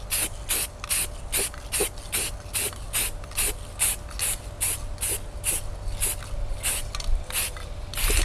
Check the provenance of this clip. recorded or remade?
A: recorded